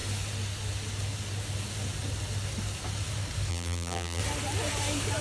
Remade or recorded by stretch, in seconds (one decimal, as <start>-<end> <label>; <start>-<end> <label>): 0.0-3.5 recorded; 3.5-4.2 remade; 4.2-5.2 recorded